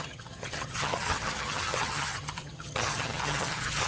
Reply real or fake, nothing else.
fake